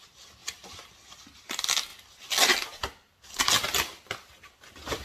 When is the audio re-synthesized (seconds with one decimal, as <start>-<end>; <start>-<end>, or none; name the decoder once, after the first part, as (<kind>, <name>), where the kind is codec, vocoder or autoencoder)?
0.4-1.5 (vocoder, BigVGAN v2); 1.9-3.4

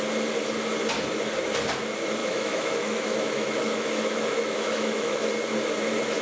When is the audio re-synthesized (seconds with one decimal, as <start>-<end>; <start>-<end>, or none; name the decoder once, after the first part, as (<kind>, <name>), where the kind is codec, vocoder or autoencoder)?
2.2-5.3 (autoencoder, DAC-VAE)

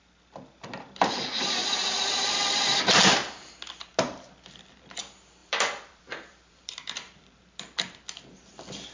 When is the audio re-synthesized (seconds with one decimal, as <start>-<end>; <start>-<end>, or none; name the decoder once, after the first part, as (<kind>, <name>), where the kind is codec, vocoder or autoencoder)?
5.4-7.6 (vocoder, BigVGAN v2)

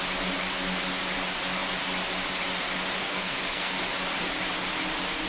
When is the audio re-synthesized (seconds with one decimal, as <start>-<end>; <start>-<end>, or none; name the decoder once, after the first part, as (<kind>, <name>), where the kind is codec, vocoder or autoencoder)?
3.0-3.8 (codec, SNAC)

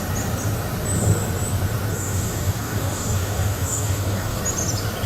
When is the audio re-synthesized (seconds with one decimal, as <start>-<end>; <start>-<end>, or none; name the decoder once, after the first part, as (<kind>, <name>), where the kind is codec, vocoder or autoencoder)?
1.9-4.4 (codec, DAC)

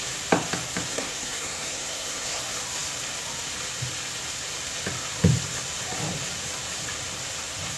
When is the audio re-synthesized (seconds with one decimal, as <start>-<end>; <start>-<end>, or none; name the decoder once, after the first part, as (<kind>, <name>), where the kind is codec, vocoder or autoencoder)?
0.9-2.4 (codec, SNAC)